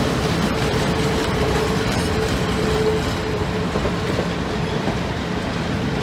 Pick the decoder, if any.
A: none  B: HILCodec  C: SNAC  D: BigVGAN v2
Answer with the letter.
A